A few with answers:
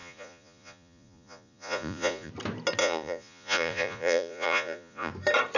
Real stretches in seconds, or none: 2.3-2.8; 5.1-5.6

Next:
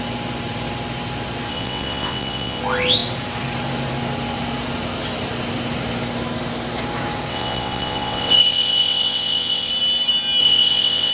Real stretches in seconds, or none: 0.0-1.5; 2.6-7.3; 9.7-10.4

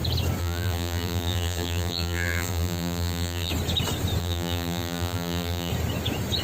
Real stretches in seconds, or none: 0.0-0.4; 3.5-4.2; 5.7-6.4

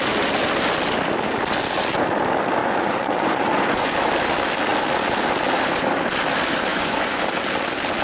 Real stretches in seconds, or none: 0.0-2.6; 3.9-6.7; 7.2-8.0